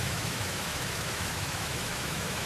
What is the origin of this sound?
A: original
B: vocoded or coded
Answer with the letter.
B